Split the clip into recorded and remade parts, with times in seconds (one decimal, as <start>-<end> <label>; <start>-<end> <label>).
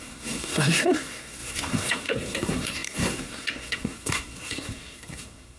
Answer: 0.0-5.6 remade